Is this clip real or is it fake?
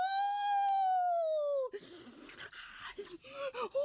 real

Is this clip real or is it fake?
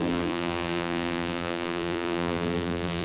fake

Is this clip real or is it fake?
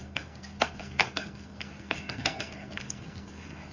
fake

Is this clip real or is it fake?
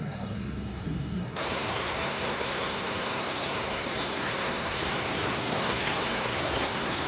fake